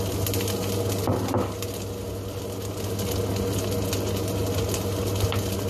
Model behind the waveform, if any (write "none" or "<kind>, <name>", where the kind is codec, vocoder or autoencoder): none